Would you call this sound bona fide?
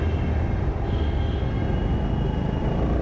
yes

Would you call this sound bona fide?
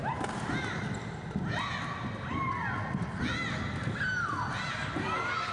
yes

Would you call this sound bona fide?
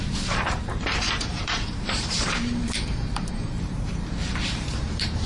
no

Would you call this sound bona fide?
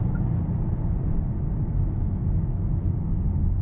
yes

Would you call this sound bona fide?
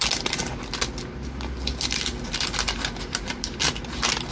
yes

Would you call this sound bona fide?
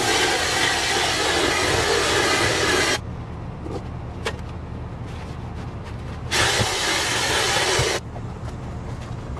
yes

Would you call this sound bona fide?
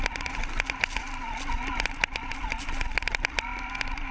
yes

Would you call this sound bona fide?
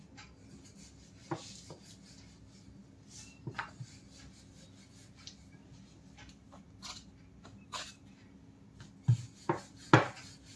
yes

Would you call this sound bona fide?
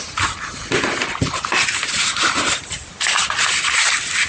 yes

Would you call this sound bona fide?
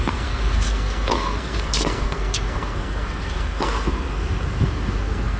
no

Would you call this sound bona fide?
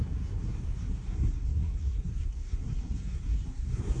no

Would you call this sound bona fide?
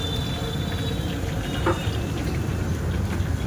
yes